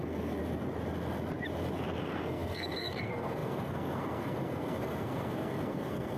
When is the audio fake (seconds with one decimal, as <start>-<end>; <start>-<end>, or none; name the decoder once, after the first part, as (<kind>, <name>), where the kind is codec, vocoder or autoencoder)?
0.0-0.4 (codec, SNAC); 2.0-6.2